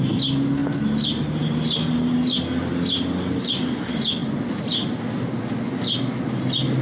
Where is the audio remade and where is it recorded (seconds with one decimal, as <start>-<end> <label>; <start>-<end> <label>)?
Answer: 0.0-6.8 recorded